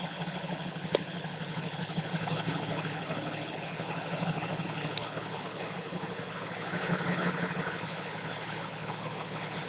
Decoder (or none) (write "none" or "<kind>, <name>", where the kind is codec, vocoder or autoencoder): codec, HILCodec